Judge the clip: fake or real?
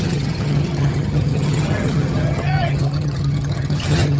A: fake